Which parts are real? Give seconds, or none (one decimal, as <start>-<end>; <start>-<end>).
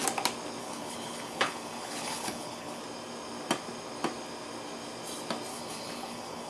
0.0-0.6; 2.8-5.5